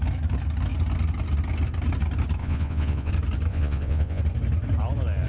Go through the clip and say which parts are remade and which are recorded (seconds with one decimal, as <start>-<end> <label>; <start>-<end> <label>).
0.0-2.4 recorded; 2.4-3.1 remade; 3.1-3.5 recorded; 3.5-4.2 remade; 4.2-5.3 recorded

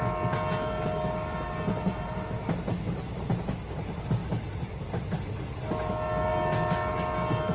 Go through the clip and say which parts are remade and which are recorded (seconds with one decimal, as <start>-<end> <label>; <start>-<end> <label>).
0.0-4.2 recorded; 4.2-5.4 remade; 5.4-7.5 recorded